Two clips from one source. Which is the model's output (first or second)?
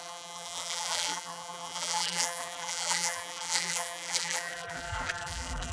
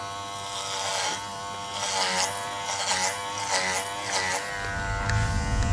first